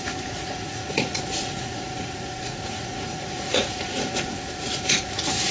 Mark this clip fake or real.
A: fake